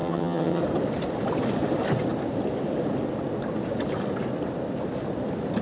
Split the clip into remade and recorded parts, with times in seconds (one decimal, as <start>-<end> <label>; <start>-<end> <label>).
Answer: 0.0-0.6 remade; 0.6-5.6 recorded